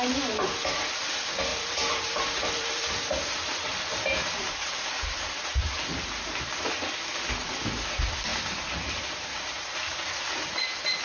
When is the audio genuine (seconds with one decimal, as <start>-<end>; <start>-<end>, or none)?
0.0-1.5; 5.7-8.3; 10.6-11.0